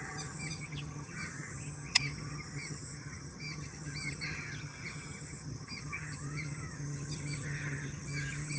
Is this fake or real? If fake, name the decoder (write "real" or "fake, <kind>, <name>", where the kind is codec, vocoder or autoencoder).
fake, vocoder, HiFi-GAN